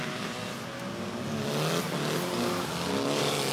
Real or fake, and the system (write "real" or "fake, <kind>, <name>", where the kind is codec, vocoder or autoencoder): real